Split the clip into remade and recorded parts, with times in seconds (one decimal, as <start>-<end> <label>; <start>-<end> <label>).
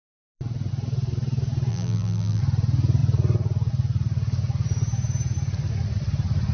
0.0-1.7 recorded; 1.7-2.4 remade; 2.4-6.5 recorded